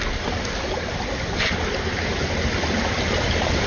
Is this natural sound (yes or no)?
yes